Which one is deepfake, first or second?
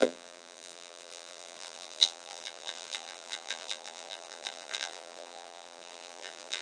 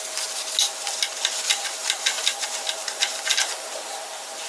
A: first